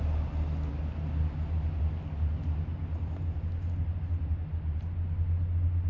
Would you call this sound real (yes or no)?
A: yes